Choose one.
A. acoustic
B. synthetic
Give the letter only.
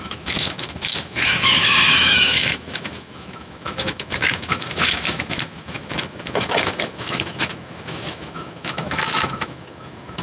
B